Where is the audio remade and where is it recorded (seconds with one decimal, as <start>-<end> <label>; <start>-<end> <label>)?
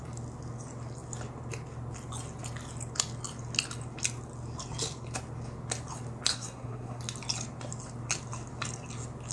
0.0-6.3 recorded; 6.3-7.0 remade; 7.0-9.3 recorded